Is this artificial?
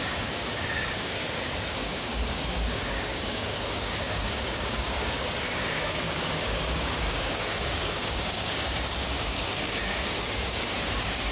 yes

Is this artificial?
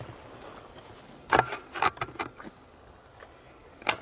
no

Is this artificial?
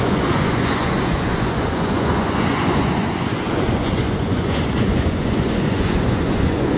yes